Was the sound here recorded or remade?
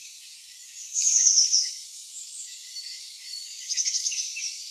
remade